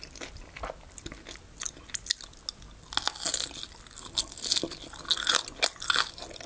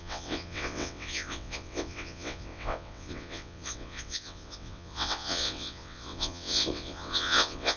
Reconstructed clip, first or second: second